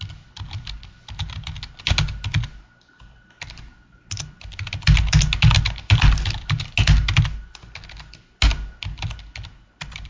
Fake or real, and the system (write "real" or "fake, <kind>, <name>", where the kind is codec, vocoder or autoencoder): real